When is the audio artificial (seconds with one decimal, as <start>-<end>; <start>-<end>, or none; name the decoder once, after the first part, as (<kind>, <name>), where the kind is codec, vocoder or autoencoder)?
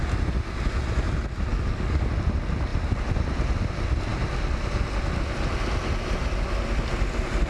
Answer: 1.5-2.1 (codec, DAC)